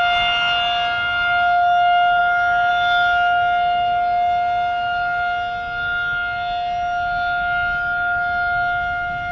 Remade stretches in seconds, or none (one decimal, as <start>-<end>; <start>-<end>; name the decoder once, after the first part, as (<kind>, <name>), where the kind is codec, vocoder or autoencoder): none